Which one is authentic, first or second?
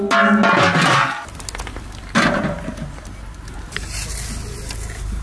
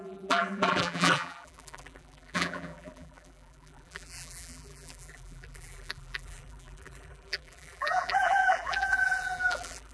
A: first